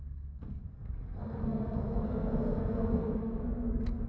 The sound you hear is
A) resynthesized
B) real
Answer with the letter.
A